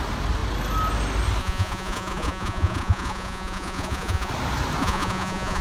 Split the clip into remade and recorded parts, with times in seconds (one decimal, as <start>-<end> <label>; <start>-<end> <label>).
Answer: 0.0-1.4 recorded; 1.4-4.3 remade; 4.3-4.8 recorded; 4.8-5.6 remade